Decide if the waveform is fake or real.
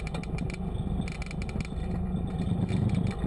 real